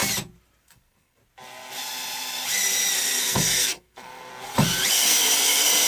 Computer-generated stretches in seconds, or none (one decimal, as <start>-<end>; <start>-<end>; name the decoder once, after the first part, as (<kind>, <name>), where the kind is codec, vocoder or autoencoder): 0.6-1.2 (codec, SNAC); 3.2-4.3; 4.9-5.9